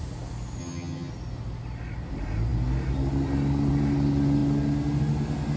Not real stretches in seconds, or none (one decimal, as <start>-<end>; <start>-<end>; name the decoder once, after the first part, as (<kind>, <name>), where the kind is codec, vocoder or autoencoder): 0.6-1.1 (vocoder, HiFi-GAN)